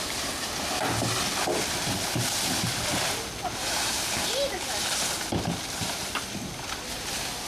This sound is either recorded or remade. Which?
recorded